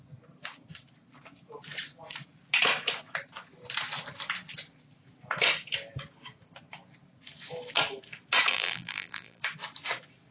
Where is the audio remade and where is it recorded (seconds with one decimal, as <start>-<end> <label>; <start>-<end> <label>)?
0.0-8.5 recorded; 8.5-9.4 remade; 9.4-10.3 recorded